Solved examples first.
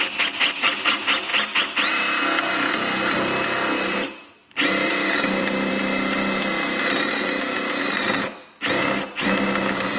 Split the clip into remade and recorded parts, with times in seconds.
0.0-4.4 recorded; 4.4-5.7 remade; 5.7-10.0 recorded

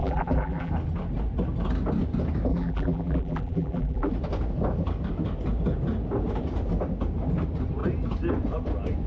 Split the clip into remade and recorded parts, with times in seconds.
0.0-0.7 remade; 0.7-2.5 recorded; 2.5-4.1 remade; 4.1-9.1 recorded

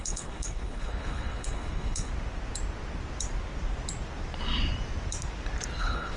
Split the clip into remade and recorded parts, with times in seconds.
0.0-2.1 remade; 2.1-5.8 recorded; 5.8-6.2 remade

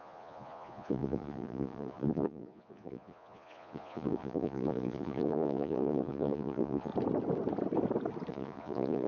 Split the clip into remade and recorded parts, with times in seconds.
0.0-6.9 remade; 6.9-8.3 recorded; 8.3-9.1 remade

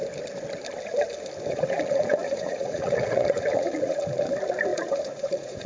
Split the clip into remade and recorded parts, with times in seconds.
0.0-1.5 recorded; 1.5-4.0 remade; 4.0-4.7 recorded; 4.7-5.7 remade

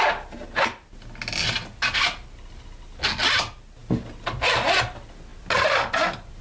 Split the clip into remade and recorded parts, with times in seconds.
0.0-6.4 recorded